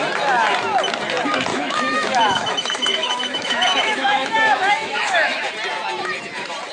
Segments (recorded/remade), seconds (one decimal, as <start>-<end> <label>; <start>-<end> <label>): 0.0-1.5 recorded; 1.5-5.5 remade; 5.5-6.7 recorded